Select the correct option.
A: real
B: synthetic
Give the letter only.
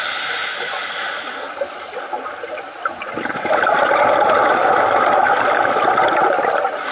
A